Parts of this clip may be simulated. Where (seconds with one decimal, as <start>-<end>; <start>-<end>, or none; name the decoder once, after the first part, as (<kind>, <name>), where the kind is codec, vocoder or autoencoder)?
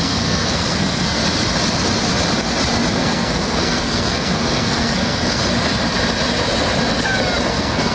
0.0-1.2 (codec, SNAC); 2.9-5.4; 7.5-7.9